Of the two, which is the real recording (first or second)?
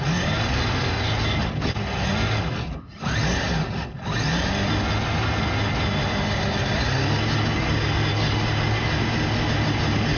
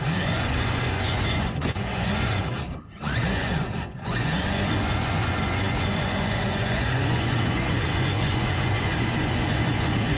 first